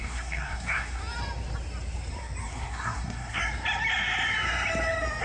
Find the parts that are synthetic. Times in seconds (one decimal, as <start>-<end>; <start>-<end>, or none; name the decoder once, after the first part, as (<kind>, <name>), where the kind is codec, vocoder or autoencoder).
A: 0.0-1.0 (codec, SNAC); 2.5-3.4